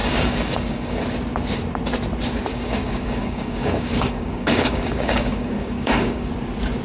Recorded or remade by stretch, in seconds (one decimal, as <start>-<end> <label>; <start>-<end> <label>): 0.0-1.0 remade; 1.0-2.5 recorded; 2.5-6.3 remade; 6.3-6.8 recorded